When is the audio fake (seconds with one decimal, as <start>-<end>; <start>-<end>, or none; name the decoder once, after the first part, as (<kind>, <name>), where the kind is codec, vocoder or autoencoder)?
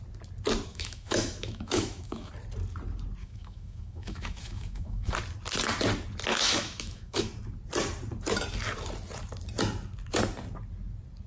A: 0.7-2.3 (autoencoder, DAC-VAE); 3.2-5.1; 6.3-7.3